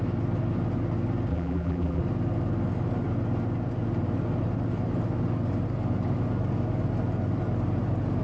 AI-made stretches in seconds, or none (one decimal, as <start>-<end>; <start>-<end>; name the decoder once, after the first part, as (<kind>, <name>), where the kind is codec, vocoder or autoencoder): 1.3-2.0 (vocoder, BigVGAN v2)

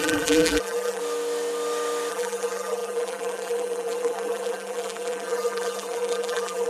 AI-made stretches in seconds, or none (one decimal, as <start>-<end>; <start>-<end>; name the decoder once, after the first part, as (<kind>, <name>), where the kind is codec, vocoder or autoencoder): 0.0-1.0 (vocoder, BigVGAN v2); 2.1-6.7

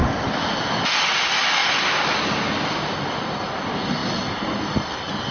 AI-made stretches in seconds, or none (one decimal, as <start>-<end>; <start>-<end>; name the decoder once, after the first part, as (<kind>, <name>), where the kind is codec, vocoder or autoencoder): 1.2-1.6 (vocoder, BigVGAN v2); 3.0-4.0

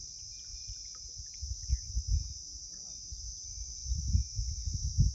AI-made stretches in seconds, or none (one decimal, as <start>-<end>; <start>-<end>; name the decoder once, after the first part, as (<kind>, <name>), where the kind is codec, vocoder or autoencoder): none

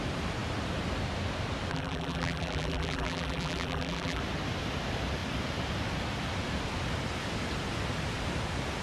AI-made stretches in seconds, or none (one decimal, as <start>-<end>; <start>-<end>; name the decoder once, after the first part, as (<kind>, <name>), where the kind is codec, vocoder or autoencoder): 1.7-4.2 (vocoder, BigVGAN v2)

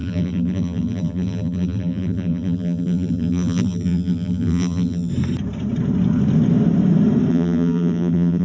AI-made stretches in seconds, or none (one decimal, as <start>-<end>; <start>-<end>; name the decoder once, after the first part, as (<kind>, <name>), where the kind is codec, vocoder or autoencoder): 0.0-5.1 (vocoder, BigVGAN v2); 7.3-8.4